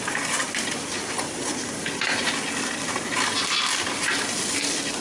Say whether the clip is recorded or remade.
recorded